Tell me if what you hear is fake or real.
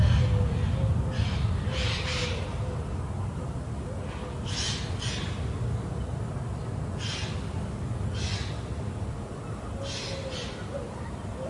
real